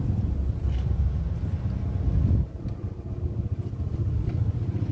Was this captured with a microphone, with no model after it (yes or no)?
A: yes